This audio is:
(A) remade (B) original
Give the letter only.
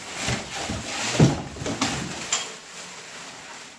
B